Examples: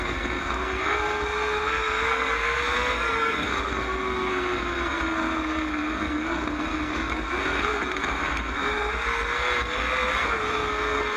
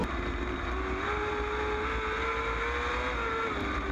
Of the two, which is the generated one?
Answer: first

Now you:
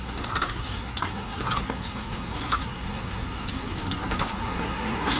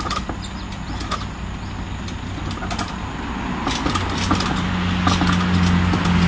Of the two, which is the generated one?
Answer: first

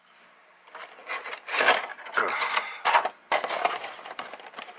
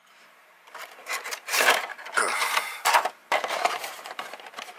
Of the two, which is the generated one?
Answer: second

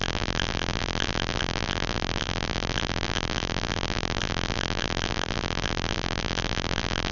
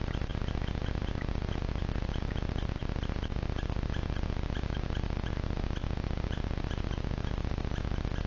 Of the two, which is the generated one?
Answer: first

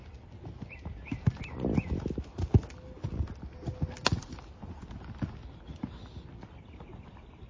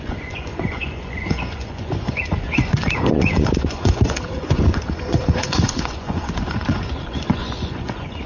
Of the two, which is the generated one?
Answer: second